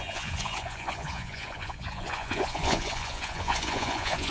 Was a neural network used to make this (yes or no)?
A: yes